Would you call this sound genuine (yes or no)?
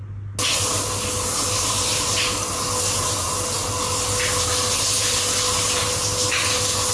yes